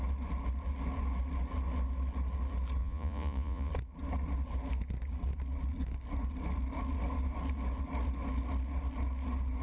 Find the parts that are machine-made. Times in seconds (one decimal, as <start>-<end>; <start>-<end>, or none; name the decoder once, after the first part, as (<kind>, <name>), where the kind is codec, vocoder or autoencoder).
2.8-3.7 (vocoder, Vocos)